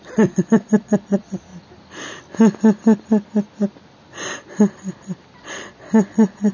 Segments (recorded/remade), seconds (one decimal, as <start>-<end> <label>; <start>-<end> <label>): 0.0-1.5 remade; 1.5-5.4 recorded; 5.4-6.5 remade